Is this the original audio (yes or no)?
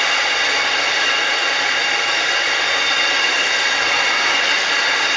yes